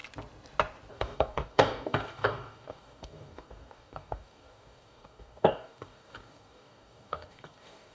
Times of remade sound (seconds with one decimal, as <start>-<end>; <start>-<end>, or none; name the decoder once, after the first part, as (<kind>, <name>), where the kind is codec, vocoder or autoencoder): 0.9-7.9 (codec, DAC)